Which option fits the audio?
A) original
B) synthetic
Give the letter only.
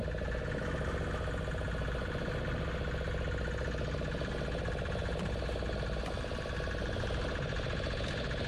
A